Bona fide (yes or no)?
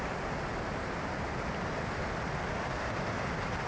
yes